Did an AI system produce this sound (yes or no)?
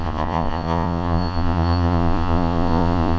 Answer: yes